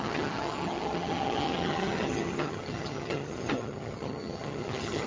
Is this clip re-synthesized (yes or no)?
yes